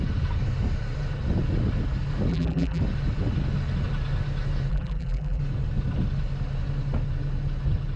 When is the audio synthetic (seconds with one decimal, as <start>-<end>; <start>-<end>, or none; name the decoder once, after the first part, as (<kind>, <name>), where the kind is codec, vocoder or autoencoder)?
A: 2.3-2.8 (vocoder, BigVGAN v2); 4.7-5.4